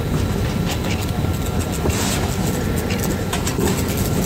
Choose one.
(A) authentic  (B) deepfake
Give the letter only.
B